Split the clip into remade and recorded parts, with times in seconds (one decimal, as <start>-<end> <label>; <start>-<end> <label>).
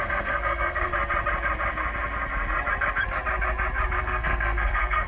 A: 0.0-0.9 remade; 0.9-4.0 recorded; 4.0-5.1 remade